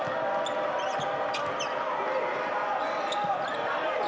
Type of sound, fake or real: real